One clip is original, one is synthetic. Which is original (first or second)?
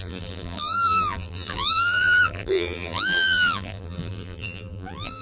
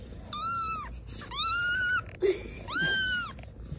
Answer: second